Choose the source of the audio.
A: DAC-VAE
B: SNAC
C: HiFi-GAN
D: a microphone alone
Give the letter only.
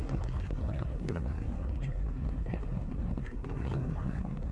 B